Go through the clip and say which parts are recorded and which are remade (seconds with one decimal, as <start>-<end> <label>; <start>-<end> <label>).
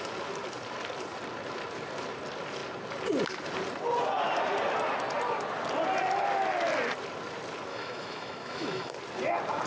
0.0-7.7 recorded; 7.7-8.9 remade; 8.9-9.7 recorded